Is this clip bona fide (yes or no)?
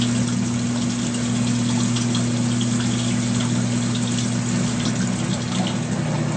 yes